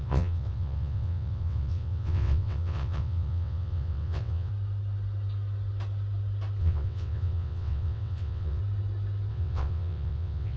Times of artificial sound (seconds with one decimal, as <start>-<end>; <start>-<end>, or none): 0.0-4.5; 6.6-8.6; 9.3-10.6